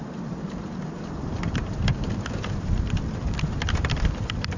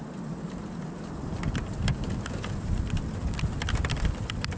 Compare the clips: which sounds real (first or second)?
second